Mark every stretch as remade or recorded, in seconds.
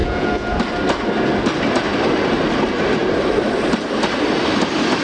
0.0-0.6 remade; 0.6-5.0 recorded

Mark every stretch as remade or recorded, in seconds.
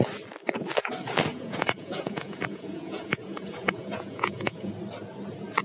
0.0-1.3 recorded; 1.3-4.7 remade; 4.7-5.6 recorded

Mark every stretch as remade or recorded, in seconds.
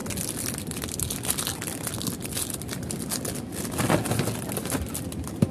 0.0-5.5 recorded